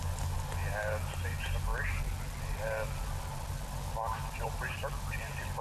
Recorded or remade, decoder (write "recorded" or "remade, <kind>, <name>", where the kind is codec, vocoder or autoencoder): recorded